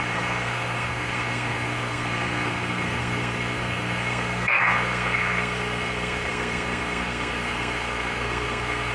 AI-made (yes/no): yes